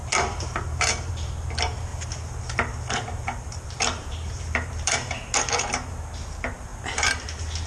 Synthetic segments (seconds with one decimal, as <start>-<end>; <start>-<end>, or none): 0.0-1.1; 1.9-6.0; 6.7-7.7